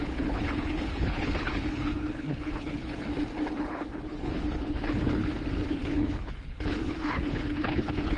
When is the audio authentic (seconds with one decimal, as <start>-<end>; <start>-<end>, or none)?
3.1-3.6; 5.2-5.7